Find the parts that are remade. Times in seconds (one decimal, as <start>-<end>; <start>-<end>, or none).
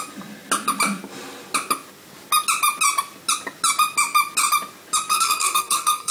5.1-6.1